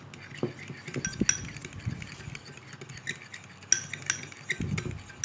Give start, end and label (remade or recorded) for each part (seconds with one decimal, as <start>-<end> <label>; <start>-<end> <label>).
0.0-5.2 recorded